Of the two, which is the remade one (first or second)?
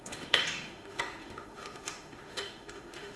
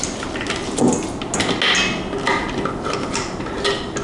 first